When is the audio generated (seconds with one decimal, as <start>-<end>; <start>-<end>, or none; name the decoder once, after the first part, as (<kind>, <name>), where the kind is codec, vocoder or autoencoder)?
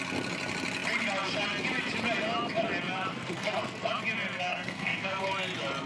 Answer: 3.1-3.9 (codec, SNAC); 4.5-5.2